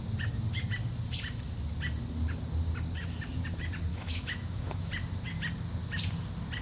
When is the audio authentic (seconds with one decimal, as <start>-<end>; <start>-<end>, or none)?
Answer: 0.0-3.9; 4.9-6.6